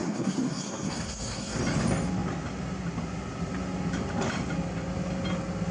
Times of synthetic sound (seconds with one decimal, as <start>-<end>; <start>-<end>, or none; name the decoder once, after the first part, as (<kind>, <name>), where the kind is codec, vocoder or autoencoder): 0.0-1.6 (codec, SNAC)